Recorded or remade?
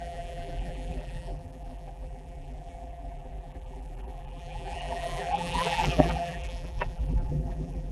remade